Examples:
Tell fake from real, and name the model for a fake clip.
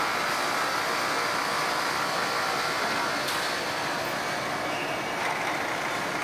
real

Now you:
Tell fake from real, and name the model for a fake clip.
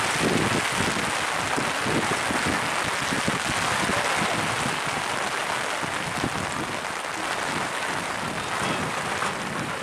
real